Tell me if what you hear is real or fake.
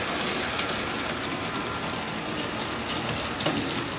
real